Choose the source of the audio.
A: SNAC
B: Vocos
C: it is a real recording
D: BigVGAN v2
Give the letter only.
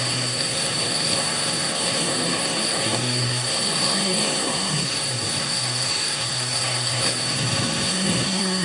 A